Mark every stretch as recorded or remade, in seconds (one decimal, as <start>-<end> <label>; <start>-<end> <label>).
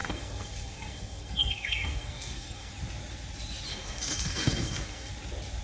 0.0-2.7 remade; 2.7-3.7 recorded; 3.7-5.1 remade; 5.1-5.6 recorded